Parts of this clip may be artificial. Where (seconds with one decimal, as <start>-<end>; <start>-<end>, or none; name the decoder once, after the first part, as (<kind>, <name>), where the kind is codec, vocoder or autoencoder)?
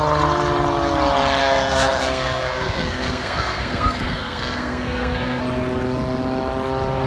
1.4-5.4 (codec, SNAC)